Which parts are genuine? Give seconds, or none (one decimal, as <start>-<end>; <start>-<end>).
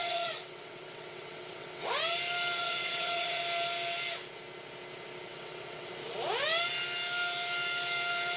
1.9-2.6; 3.4-5.3; 5.9-8.4